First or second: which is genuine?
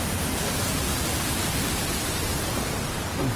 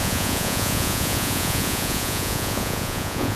first